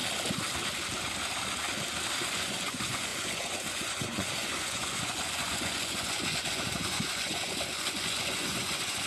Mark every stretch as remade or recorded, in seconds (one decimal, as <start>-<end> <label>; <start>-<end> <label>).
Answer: 0.0-2.2 recorded; 2.2-9.1 remade